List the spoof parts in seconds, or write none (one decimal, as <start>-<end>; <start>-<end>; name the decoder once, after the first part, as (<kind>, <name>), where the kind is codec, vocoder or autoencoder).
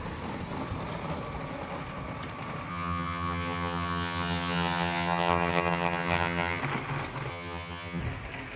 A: 2.7-6.6 (vocoder, HiFi-GAN); 7.3-8.0